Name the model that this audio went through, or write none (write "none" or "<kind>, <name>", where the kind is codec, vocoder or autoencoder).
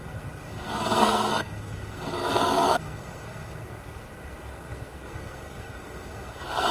codec, SNAC